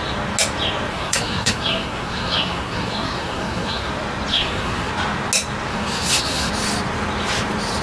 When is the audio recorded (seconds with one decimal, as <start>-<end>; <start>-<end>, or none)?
0.0-0.9; 3.9-4.3; 4.9-5.7; 6.5-7.8